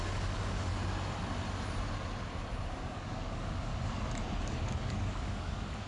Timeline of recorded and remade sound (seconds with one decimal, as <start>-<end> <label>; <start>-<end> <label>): 0.0-0.7 remade; 0.7-2.7 recorded; 2.7-3.7 remade; 3.7-4.4 recorded; 4.4-5.9 remade